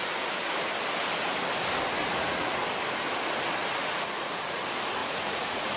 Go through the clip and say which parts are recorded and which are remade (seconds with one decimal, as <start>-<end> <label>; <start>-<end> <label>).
0.0-2.0 recorded; 2.0-2.6 remade; 2.6-3.8 recorded; 3.8-4.6 remade; 4.6-5.0 recorded; 5.0-5.8 remade

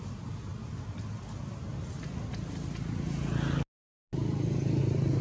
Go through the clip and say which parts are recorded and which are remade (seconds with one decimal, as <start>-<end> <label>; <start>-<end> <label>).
0.0-5.2 recorded